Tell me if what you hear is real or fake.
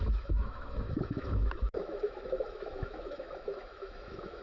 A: fake